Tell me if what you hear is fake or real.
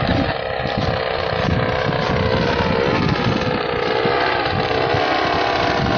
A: real